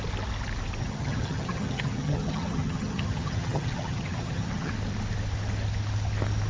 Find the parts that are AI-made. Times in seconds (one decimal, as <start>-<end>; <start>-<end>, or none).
0.8-4.7